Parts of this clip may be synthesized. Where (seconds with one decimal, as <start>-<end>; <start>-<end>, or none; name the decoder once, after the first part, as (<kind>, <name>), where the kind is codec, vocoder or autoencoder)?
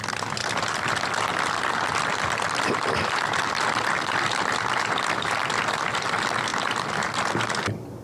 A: 0.4-0.9 (vocoder, BigVGAN v2); 1.3-5.4; 6.5-7.2